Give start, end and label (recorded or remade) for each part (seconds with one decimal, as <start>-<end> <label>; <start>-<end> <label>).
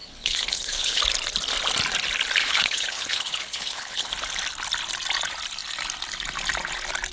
0.0-1.0 remade; 1.0-2.4 recorded; 2.4-4.1 remade; 4.1-7.1 recorded